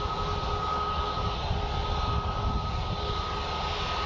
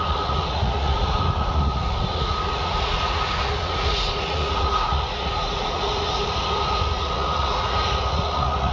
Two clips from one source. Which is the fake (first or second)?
second